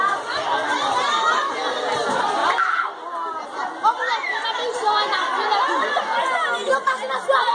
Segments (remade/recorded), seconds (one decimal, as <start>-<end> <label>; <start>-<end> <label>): 0.0-7.5 recorded